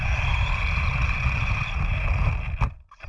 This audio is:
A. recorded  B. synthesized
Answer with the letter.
A